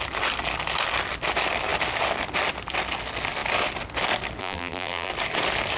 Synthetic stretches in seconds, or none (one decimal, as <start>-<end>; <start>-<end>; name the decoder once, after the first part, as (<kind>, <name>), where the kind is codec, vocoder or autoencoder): 4.4-5.1 (vocoder, BigVGAN v2)